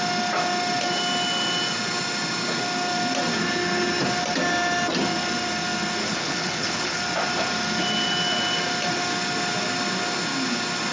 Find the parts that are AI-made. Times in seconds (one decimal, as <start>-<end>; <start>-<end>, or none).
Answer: 6.0-7.0